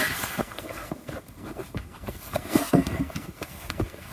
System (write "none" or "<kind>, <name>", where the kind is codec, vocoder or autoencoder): codec, SNAC